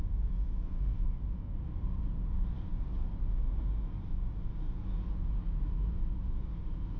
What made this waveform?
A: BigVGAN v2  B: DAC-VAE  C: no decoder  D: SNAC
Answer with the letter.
A